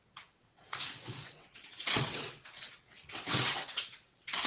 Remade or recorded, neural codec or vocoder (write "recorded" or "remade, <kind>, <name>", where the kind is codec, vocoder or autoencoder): remade, vocoder, WaveNeXt